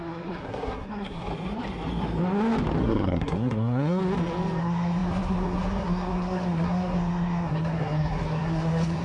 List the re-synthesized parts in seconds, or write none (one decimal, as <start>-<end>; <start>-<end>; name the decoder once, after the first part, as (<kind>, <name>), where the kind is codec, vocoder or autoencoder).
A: 0.0-1.3 (codec, SNAC); 2.8-4.0; 4.6-9.0